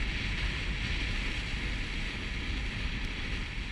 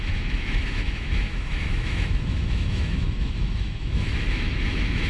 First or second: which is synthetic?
second